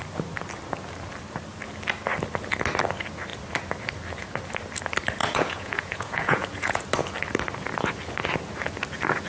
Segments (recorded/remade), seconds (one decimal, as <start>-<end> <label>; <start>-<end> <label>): 0.0-5.2 recorded; 5.2-6.8 remade; 6.8-9.3 recorded